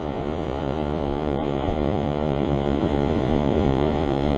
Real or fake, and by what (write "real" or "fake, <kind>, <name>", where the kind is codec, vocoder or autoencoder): fake, vocoder, Vocos